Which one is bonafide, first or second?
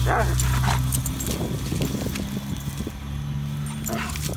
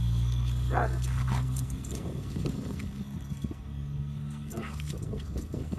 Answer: first